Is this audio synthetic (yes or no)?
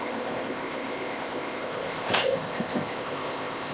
yes